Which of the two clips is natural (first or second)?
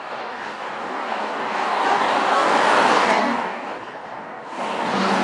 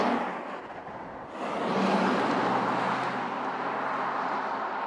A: second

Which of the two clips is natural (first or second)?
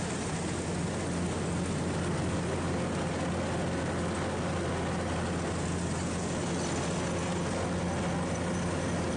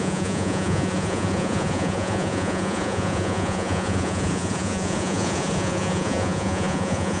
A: first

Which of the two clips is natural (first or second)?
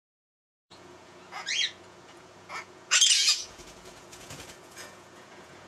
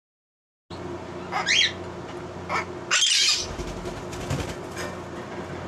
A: second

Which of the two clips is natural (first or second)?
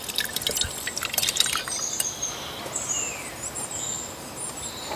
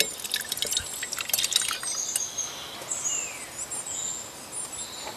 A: second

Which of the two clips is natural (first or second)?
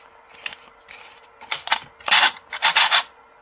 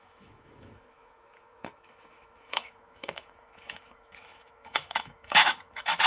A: first